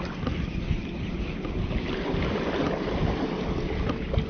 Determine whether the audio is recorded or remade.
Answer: recorded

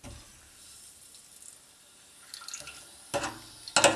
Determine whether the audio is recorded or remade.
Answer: recorded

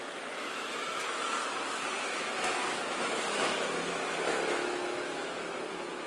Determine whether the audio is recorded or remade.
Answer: remade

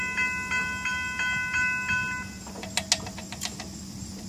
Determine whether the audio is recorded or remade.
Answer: recorded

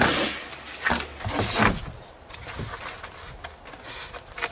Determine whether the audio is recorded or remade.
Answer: recorded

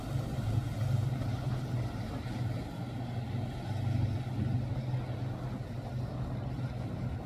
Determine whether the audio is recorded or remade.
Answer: recorded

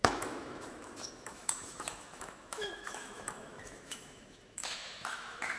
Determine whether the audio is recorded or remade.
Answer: remade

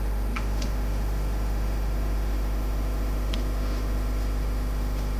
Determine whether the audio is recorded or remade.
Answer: remade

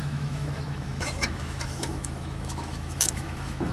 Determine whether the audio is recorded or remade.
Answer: remade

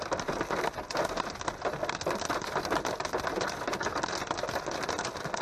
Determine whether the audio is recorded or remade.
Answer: recorded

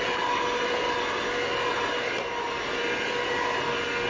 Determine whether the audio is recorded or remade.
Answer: recorded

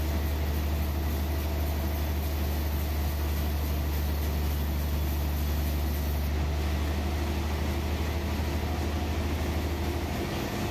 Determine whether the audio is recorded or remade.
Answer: recorded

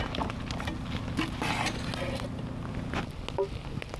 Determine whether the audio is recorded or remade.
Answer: recorded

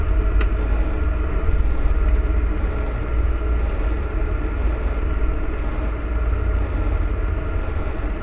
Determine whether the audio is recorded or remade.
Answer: recorded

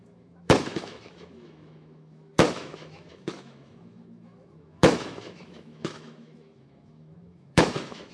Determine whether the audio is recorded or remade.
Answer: remade